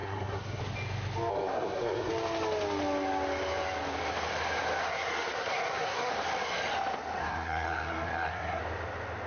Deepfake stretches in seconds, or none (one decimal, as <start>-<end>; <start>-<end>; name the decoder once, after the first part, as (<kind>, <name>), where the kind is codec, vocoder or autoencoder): 0.0-0.6 (codec, SNAC); 1.3-2.1; 4.8-6.1; 7.2-8.6